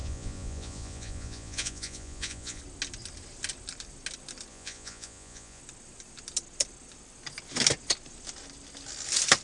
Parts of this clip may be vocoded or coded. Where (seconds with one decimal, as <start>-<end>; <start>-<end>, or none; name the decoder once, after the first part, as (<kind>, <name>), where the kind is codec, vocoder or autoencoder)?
0.0-2.6 (vocoder, Vocos); 4.5-5.6